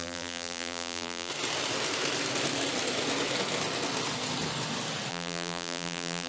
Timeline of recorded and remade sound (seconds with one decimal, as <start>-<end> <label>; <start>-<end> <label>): 0.0-1.3 remade; 1.3-5.1 recorded; 5.1-6.3 remade